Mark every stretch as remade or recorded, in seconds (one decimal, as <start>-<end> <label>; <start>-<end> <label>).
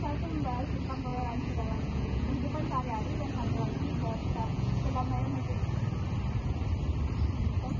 0.0-1.1 recorded; 1.1-2.3 remade; 2.3-4.2 recorded; 4.2-5.6 remade; 5.6-7.8 recorded